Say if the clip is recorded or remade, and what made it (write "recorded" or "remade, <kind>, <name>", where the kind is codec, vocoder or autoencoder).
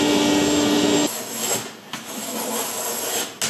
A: recorded